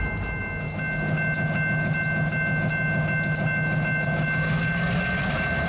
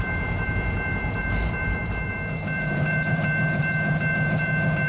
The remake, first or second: second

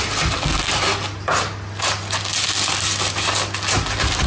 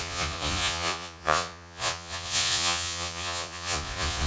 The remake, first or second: second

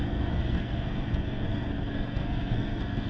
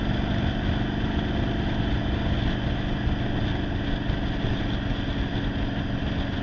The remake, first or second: first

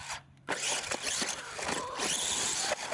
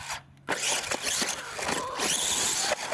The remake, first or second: first